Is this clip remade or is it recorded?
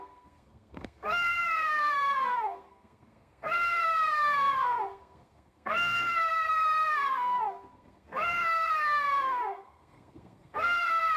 remade